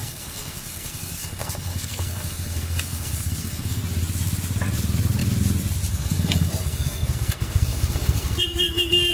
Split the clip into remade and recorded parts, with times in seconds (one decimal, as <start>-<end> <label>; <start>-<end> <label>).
0.0-3.8 remade; 3.8-5.9 recorded; 5.9-9.1 remade